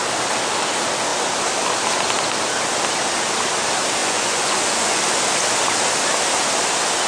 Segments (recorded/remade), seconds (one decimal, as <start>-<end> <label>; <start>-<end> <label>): 0.0-4.0 recorded; 4.0-5.0 remade; 5.0-7.1 recorded